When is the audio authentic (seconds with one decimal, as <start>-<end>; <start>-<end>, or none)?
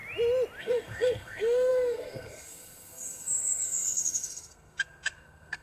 0.0-0.6